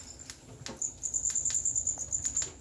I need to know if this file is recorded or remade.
recorded